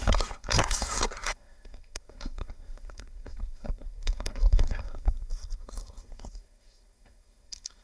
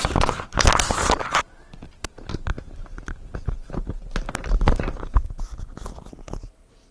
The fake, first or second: first